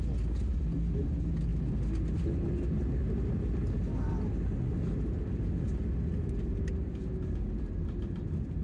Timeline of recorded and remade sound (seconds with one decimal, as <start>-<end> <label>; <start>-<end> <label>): 0.0-8.6 recorded